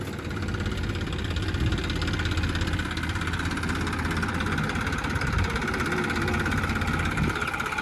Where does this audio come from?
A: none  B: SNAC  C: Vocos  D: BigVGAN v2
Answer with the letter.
A